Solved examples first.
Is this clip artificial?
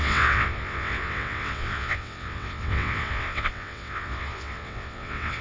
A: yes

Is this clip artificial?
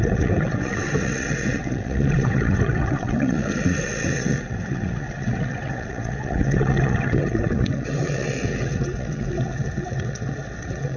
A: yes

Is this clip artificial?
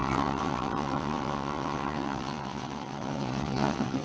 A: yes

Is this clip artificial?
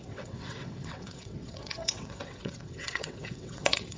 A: yes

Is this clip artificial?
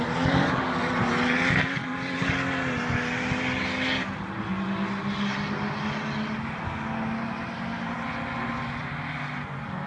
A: no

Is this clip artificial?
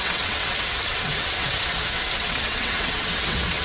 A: yes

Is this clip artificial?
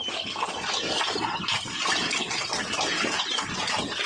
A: no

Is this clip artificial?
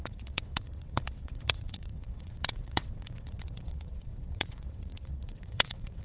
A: yes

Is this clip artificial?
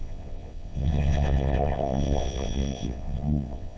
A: yes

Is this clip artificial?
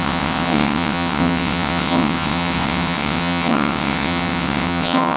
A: yes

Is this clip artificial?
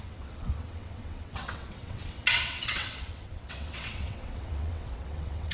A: yes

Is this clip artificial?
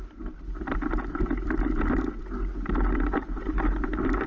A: no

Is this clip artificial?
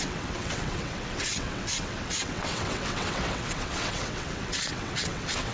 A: yes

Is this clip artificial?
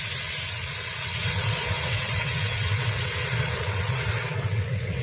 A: yes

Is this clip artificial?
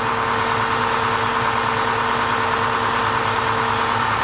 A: no